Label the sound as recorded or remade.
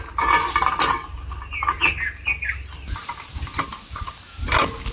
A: recorded